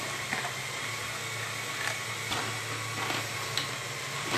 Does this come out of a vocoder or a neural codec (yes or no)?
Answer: no